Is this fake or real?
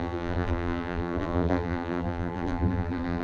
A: fake